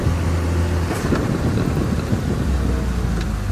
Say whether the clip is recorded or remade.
recorded